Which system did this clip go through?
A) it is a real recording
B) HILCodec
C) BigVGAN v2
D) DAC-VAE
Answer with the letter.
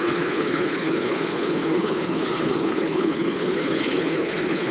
B